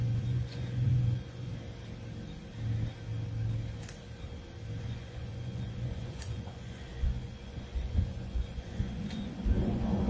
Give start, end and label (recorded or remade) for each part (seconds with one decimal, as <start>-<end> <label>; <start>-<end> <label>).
0.0-1.5 remade; 1.5-4.8 recorded; 4.8-10.1 remade